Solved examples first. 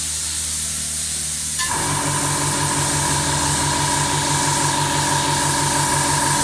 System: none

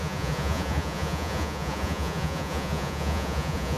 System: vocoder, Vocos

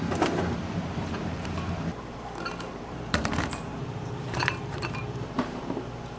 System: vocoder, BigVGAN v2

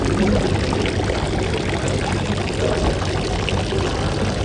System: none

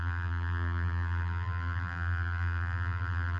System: vocoder, BigVGAN v2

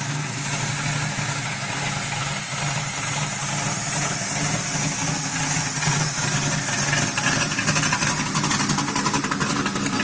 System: none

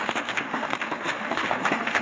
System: autoencoder, DAC-VAE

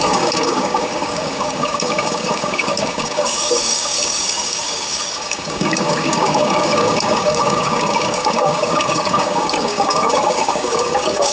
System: codec, DAC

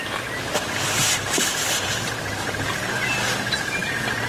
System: none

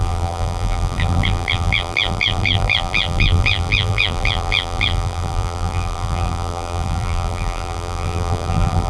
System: vocoder, BigVGAN v2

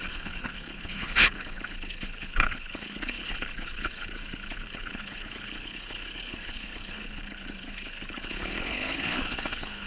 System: codec, HILCodec